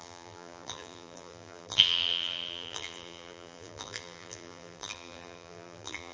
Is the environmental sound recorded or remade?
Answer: remade